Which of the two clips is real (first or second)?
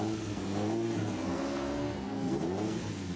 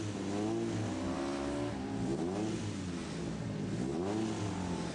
second